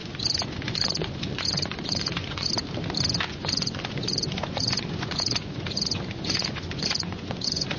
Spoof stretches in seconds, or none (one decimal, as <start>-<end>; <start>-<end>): 0.0-2.5; 3.3-7.8

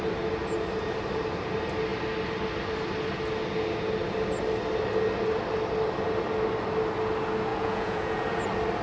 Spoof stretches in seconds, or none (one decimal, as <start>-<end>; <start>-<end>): 7.5-8.4

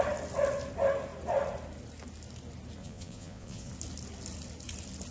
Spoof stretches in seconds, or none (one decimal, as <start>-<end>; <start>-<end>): 2.8-3.7

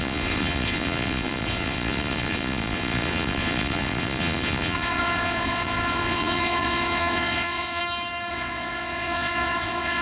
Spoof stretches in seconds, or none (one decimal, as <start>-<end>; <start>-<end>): 0.0-7.8; 8.3-10.0

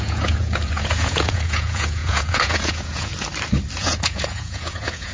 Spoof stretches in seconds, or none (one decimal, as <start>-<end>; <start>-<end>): 0.0-3.1; 3.8-5.1